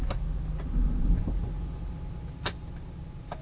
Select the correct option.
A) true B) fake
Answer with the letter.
A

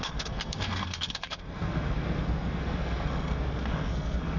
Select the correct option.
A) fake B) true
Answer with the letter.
A